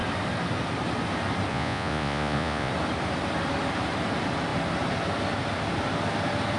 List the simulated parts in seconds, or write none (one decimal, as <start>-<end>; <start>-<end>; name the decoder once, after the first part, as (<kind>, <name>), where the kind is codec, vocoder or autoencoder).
1.5-2.7 (vocoder, Vocos)